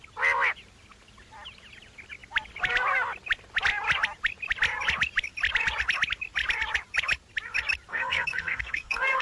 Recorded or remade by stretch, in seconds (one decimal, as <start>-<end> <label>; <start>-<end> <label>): 0.0-7.9 recorded; 7.9-9.2 remade